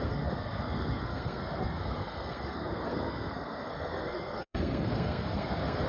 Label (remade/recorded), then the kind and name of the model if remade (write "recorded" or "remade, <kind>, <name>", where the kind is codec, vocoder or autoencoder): remade, codec, SNAC